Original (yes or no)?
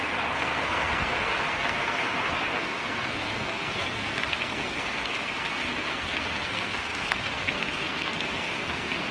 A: no